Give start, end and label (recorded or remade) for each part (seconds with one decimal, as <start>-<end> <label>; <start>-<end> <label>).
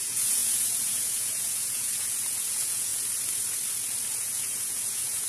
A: 0.0-2.9 remade; 2.9-4.1 recorded; 4.1-5.3 remade